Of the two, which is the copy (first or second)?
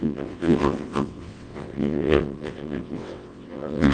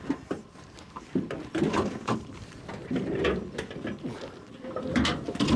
first